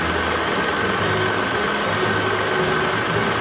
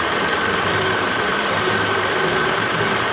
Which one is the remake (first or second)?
second